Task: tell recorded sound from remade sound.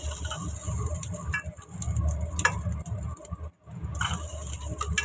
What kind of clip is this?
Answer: recorded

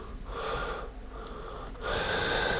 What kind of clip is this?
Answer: recorded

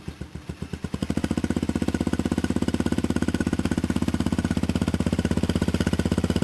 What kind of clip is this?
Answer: recorded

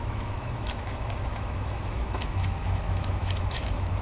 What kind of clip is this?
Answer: remade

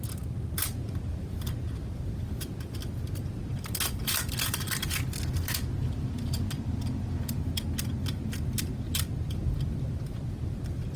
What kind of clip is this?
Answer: recorded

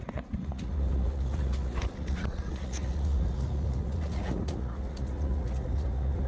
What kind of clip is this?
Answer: remade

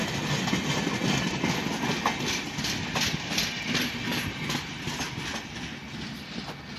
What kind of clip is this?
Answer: recorded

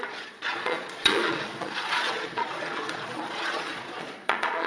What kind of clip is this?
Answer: remade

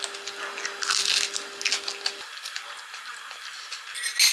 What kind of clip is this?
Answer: recorded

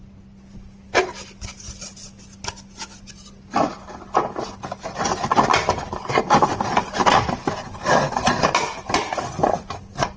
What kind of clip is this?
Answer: recorded